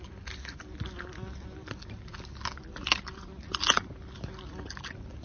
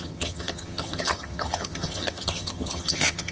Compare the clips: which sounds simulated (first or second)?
second